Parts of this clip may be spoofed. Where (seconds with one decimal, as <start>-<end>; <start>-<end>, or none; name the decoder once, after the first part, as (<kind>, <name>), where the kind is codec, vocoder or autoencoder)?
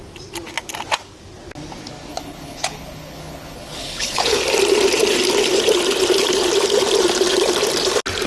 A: 2.1-4.4 (codec, HILCodec)